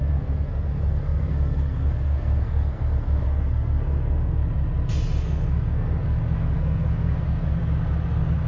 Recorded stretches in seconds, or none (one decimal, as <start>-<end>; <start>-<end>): 4.4-5.2; 7.6-8.1